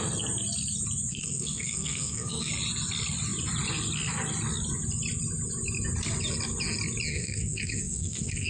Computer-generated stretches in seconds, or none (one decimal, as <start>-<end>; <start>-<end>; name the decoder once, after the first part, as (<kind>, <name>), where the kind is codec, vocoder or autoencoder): 1.1-2.5 (codec, SNAC); 7.1-8.5